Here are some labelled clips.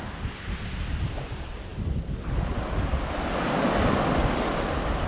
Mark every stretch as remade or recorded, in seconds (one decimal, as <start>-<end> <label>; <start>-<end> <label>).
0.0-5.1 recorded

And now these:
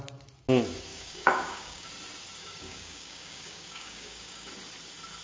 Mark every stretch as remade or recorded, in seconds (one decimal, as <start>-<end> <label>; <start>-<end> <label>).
0.0-0.9 recorded; 0.9-1.9 remade; 1.9-2.4 recorded; 2.4-4.5 remade; 4.5-5.2 recorded

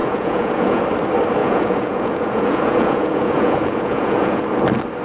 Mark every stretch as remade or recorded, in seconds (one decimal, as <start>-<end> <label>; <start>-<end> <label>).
0.0-0.8 remade; 0.8-1.4 recorded; 1.4-4.4 remade; 4.4-5.0 recorded

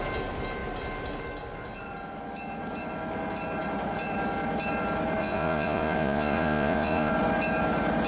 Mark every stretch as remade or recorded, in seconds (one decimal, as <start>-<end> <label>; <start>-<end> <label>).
0.0-5.2 recorded; 5.2-7.1 remade; 7.1-8.1 recorded

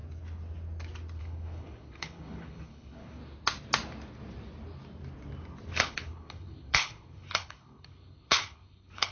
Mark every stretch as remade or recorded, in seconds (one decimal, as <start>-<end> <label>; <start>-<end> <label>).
0.0-1.2 recorded; 1.2-3.2 remade; 3.2-5.7 recorded; 5.7-9.1 remade

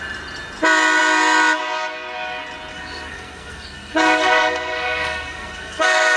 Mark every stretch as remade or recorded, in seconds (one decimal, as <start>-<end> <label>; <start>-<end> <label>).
0.0-2.7 recorded; 2.7-6.2 remade

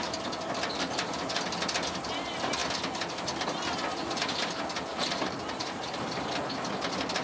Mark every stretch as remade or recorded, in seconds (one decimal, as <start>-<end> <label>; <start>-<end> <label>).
0.0-4.9 recorded; 4.9-6.2 remade; 6.2-7.2 recorded

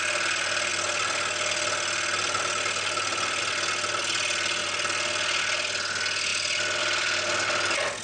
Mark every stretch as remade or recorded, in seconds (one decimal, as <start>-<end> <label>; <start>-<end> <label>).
0.0-8.0 recorded